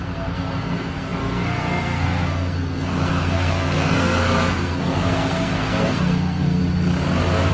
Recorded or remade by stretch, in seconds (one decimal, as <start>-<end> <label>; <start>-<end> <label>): 0.0-6.6 remade; 6.6-7.5 recorded